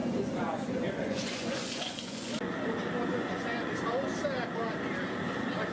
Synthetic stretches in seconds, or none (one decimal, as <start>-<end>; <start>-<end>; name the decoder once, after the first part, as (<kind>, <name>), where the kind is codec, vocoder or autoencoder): 0.0-2.3 (vocoder, Vocos); 3.1-3.7